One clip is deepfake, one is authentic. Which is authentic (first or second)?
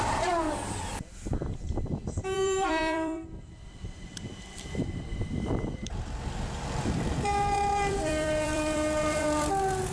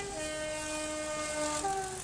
second